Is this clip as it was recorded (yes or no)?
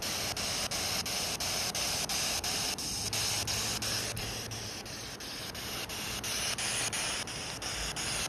yes